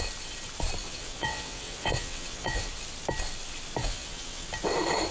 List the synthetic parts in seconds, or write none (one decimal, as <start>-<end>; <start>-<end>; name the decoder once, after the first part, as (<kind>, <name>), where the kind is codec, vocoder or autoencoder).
0.8-2.7 (vocoder, WaveNeXt); 3.8-4.5